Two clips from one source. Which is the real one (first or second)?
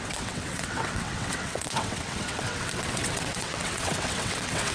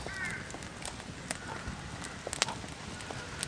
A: second